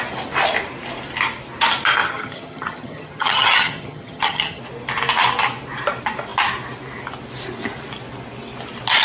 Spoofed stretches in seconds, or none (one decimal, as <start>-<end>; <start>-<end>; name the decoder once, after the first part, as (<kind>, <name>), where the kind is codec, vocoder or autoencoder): 2.0-4.6 (vocoder, HiFi-GAN)